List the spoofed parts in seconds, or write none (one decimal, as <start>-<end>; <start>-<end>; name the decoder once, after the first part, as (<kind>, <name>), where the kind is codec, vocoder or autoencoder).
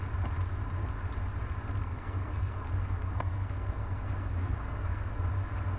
1.8-5.3 (codec, SNAC)